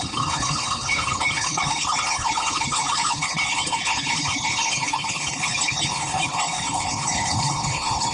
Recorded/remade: remade